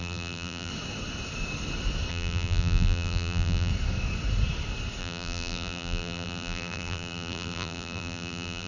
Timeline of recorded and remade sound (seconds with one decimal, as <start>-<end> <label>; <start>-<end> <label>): 0.0-0.7 remade; 0.7-2.1 recorded; 2.1-3.7 remade; 3.7-5.0 recorded; 5.0-8.7 remade

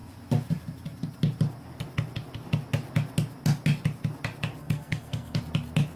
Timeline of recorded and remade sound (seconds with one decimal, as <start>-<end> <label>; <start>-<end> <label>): 0.0-4.6 recorded; 4.6-5.4 remade; 5.4-6.0 recorded